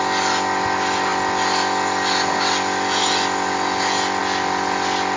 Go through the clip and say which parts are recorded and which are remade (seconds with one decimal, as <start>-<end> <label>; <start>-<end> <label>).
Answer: 0.0-5.2 recorded